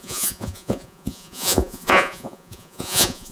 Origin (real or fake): fake